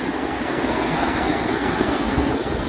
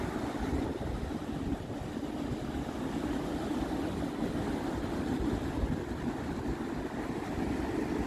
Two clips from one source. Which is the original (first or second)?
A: second